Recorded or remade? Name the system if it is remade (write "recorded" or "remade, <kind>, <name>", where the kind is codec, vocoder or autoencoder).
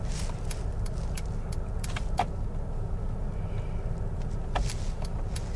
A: recorded